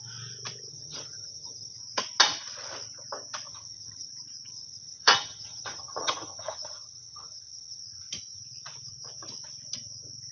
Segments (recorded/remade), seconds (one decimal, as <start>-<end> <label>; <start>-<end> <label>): 0.0-0.7 recorded; 0.7-1.8 remade; 1.8-3.5 recorded; 3.5-4.1 remade; 4.1-4.5 recorded; 4.5-7.8 remade; 7.8-10.3 recorded